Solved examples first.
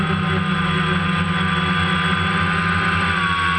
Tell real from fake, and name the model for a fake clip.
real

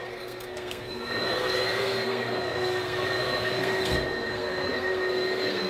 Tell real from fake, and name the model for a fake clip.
fake, codec, SNAC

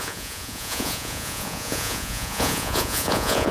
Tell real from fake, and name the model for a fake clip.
fake, vocoder, Vocos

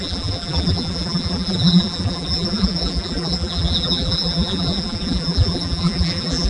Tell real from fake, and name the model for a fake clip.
fake, vocoder, BigVGAN v2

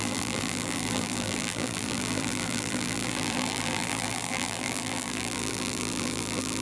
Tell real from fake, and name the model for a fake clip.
fake, vocoder, BigVGAN v2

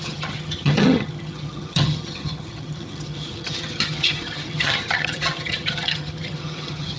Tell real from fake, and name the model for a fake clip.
fake, vocoder, HiFi-GAN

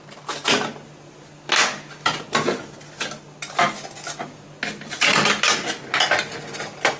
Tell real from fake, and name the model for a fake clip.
real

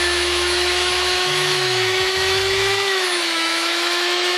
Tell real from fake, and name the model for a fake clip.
fake, autoencoder, DAC-VAE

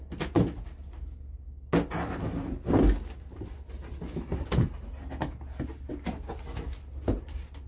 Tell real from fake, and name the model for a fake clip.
real